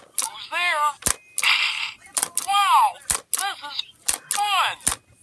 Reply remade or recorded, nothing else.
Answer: recorded